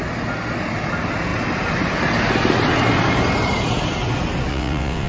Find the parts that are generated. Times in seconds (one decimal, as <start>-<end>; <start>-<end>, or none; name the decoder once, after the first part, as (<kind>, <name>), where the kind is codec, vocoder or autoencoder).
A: 4.5-5.1 (vocoder, WaveNeXt)